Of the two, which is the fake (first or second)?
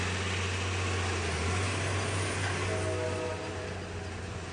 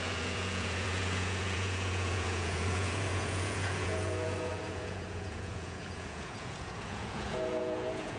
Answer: second